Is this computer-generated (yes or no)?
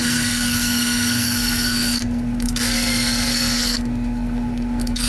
yes